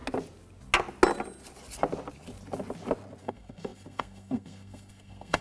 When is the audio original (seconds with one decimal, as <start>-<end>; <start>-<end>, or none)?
0.0-3.2